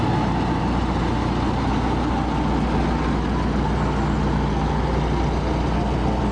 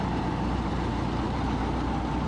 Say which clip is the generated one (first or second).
second